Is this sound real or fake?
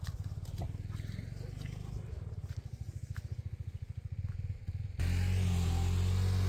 real